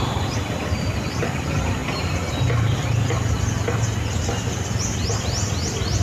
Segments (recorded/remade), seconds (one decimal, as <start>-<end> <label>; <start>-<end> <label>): 0.0-6.0 recorded